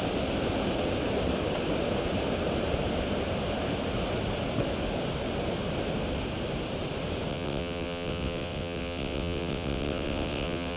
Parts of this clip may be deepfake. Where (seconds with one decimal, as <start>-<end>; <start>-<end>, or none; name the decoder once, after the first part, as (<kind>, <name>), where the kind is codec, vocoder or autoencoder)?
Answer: 7.3-10.8 (vocoder, WaveNeXt)